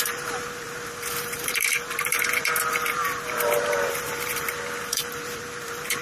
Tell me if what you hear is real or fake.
fake